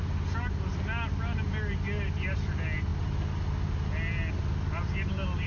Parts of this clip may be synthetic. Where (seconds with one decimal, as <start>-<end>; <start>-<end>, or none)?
none